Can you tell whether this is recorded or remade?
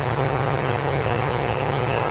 remade